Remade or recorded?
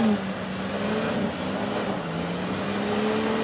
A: recorded